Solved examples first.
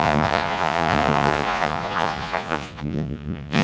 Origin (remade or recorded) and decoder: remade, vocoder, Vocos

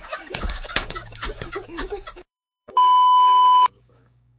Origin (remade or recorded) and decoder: remade, codec, DAC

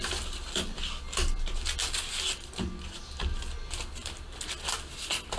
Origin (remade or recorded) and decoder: recorded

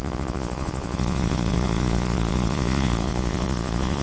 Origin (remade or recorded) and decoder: remade, vocoder, Vocos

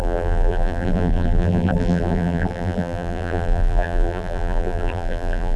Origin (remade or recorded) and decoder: remade, vocoder, BigVGAN v2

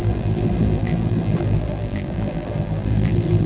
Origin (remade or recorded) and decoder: remade, vocoder, BigVGAN v2